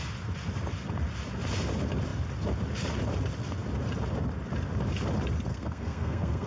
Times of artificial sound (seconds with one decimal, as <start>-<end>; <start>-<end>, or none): 5.5-6.5